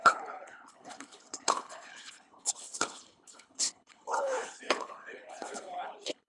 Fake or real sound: fake